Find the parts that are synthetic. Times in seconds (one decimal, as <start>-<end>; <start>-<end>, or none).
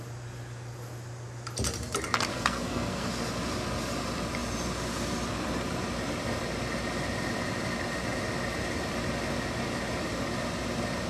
2.3-3.1